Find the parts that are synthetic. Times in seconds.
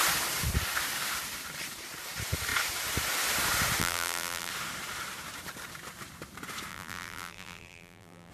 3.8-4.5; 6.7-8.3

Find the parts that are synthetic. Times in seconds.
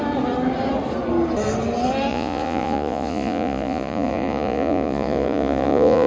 2.1-6.1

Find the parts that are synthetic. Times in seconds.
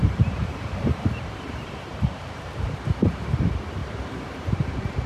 0.0-3.1; 3.8-5.1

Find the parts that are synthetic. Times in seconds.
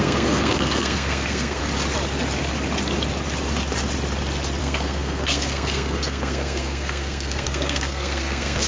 0.0-1.6; 4.6-8.7